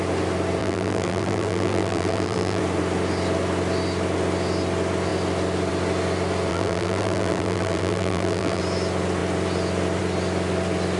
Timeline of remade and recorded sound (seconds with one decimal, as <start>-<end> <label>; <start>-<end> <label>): 0.0-0.6 recorded; 0.6-2.6 remade; 2.6-6.5 recorded; 6.5-8.6 remade; 8.6-11.0 recorded